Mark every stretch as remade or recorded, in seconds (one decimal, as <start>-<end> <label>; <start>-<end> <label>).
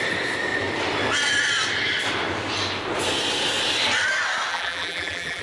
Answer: 0.0-4.5 recorded; 4.5-5.4 remade